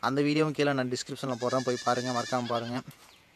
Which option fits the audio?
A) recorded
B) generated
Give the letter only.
B